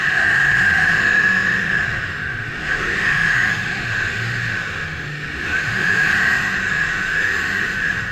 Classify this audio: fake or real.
fake